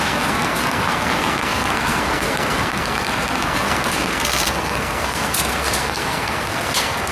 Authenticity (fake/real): fake